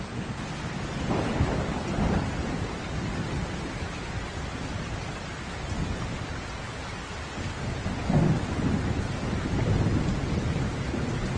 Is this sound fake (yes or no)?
no